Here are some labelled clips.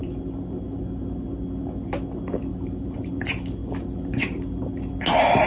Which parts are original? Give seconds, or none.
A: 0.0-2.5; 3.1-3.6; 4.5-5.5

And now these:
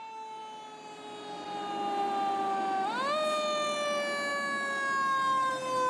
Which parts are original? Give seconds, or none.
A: 0.0-5.9

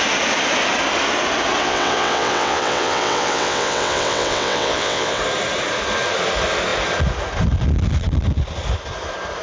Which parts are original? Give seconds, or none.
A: 0.0-1.6; 5.2-9.4

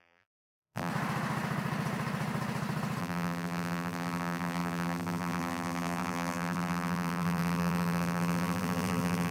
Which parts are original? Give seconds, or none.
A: 0.9-3.0